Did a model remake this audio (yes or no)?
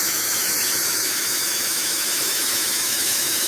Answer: yes